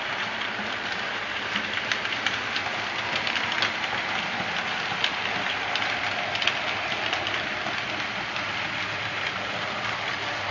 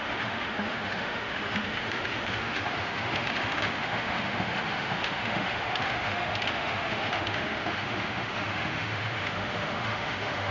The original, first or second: first